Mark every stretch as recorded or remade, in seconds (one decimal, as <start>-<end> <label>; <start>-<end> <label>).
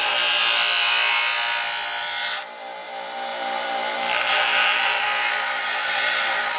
0.0-6.6 recorded